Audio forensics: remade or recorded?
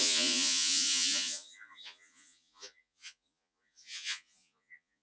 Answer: remade